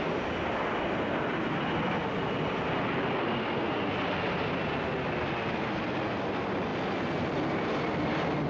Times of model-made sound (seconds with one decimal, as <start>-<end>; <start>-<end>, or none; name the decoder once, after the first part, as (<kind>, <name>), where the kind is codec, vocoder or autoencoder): none